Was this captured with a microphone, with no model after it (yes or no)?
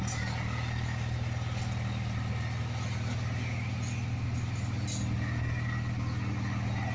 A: yes